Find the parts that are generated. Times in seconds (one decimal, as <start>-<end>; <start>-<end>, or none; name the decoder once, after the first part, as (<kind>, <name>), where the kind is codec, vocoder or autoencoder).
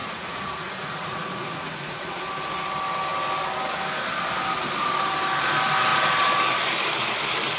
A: 0.0-2.2 (vocoder, Vocos)